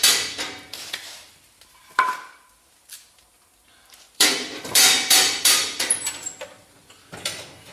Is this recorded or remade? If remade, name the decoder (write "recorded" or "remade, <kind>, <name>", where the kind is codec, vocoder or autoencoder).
remade, vocoder, BigVGAN v2